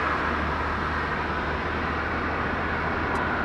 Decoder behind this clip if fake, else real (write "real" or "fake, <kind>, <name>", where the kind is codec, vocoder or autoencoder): real